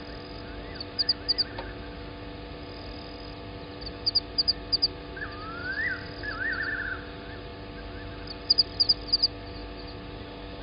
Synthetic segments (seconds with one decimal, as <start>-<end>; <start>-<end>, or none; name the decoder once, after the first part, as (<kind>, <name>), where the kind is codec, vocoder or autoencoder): none